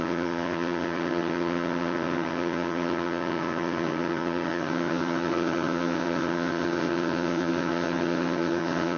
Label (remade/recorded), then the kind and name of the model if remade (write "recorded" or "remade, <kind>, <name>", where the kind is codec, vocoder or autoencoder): remade, vocoder, HiFi-GAN